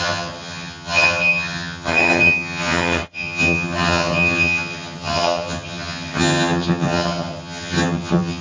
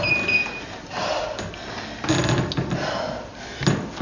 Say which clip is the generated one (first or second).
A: first